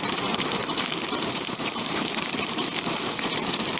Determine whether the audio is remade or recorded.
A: remade